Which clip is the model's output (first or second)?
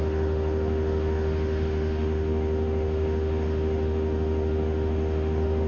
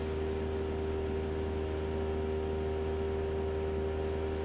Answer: first